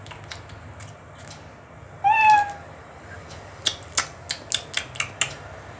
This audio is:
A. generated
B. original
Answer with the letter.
B